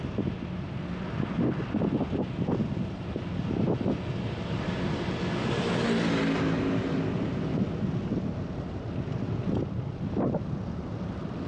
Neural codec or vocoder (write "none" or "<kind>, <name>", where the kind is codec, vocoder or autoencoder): none